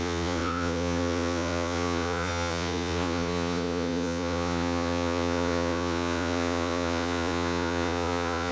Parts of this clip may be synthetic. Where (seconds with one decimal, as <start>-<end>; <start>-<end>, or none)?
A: 0.0-8.5